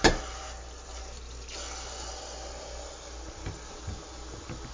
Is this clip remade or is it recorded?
recorded